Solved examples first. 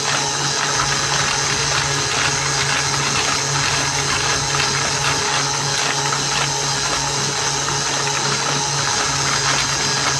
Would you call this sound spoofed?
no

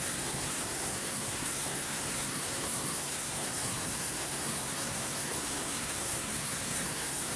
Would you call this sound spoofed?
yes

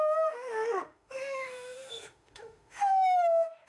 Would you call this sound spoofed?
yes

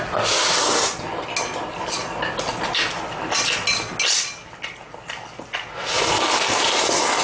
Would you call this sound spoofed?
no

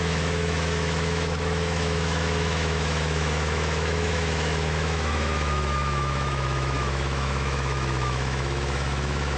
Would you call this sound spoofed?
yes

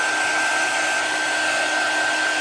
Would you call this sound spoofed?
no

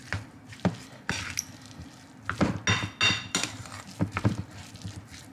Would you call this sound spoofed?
no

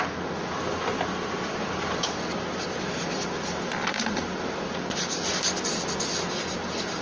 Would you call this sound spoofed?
no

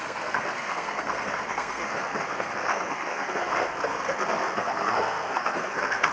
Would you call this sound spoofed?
yes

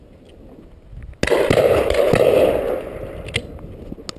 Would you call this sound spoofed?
no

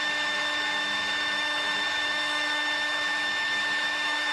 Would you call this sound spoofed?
yes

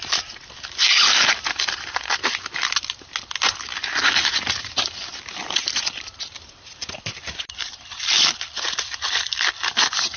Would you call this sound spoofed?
no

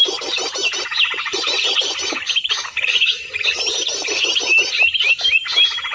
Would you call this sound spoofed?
yes